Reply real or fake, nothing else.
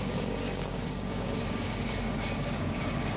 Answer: fake